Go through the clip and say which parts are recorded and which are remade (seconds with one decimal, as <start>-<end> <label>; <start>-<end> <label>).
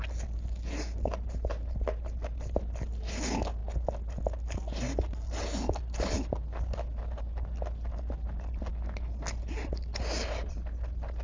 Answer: 0.0-11.2 recorded